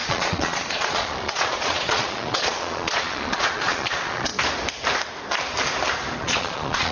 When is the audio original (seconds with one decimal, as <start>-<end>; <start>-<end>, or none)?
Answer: 4.3-6.2